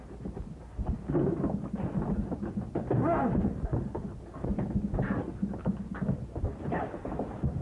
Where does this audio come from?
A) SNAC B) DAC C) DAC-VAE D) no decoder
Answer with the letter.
D